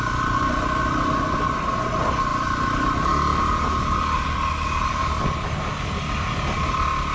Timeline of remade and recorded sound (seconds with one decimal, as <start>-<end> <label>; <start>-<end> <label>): 0.0-7.1 recorded